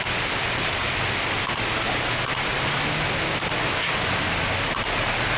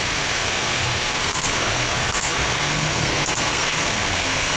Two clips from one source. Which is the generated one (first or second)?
second